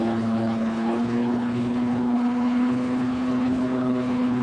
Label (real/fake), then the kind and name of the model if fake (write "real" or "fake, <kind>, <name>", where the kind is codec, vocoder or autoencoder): fake, codec, HILCodec